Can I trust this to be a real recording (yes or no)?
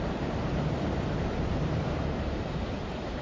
no